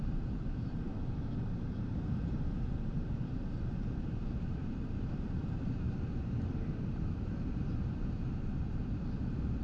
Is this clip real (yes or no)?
no